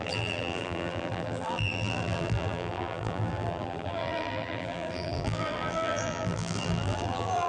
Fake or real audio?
fake